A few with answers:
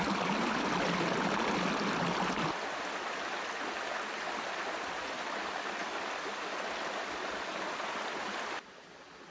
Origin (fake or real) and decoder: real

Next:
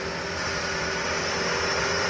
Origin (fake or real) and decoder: real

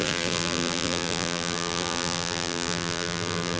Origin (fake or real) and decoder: fake, vocoder, BigVGAN v2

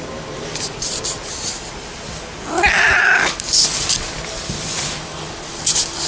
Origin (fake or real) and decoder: real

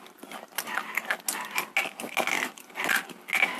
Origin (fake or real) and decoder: real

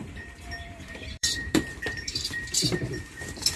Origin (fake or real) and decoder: fake, vocoder, BigVGAN v2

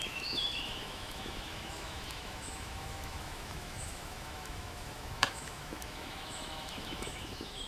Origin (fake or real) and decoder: fake, autoencoder, DAC-VAE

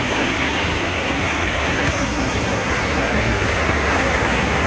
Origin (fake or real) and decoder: fake, codec, SNAC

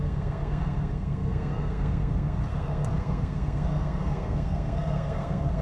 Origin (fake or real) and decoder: fake, codec, SNAC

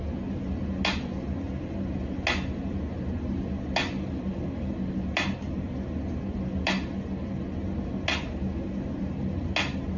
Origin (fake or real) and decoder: real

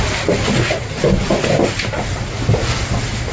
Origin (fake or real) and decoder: real